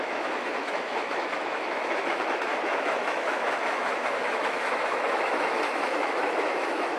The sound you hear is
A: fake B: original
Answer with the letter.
A